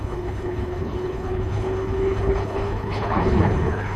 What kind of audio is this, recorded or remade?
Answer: remade